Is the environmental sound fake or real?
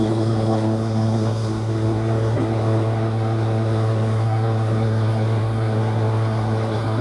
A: fake